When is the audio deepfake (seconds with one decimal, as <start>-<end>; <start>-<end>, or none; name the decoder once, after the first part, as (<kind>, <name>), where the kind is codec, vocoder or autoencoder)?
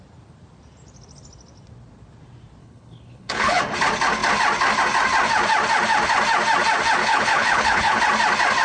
2.6-3.6 (codec, HILCodec); 7.0-8.0